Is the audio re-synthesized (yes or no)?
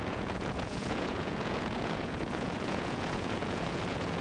yes